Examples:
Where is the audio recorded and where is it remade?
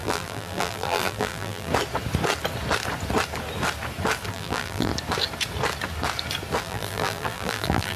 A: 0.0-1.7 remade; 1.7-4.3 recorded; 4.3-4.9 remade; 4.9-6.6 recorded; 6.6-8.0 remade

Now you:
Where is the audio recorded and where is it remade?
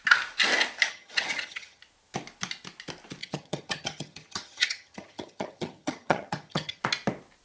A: 0.0-0.9 recorded; 0.9-1.8 remade; 1.8-3.2 recorded; 3.2-6.8 remade; 6.8-7.4 recorded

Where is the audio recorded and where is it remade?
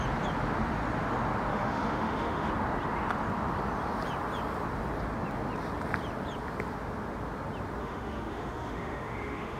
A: 0.0-1.5 recorded; 1.5-2.5 remade; 2.5-7.8 recorded; 7.8-9.6 remade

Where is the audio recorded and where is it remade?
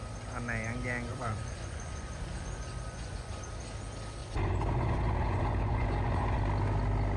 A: 0.0-1.1 recorded; 1.1-3.4 remade; 3.4-4.2 recorded; 4.2-6.4 remade; 6.4-7.2 recorded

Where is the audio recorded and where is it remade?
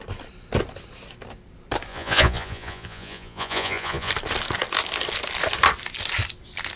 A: 0.0-1.9 recorded; 1.9-4.1 remade; 4.1-6.8 recorded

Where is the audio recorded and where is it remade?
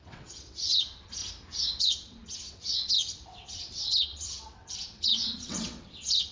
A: 0.0-1.2 remade; 1.2-1.8 recorded; 1.8-6.3 remade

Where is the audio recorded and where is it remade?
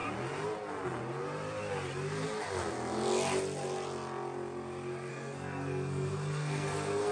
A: 0.0-5.1 recorded; 5.1-7.1 remade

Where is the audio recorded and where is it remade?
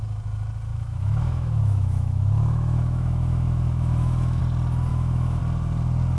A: 0.0-0.7 recorded; 0.7-4.4 remade; 4.4-4.9 recorded; 4.9-5.4 remade; 5.4-6.2 recorded